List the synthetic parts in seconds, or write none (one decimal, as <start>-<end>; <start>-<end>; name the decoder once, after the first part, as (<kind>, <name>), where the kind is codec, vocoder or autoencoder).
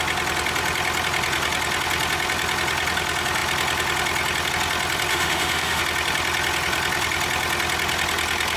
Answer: 5.1-5.8 (autoencoder, DAC-VAE)